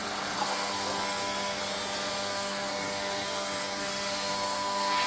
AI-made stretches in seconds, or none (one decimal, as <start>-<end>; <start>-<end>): 0.0-1.6; 2.2-5.1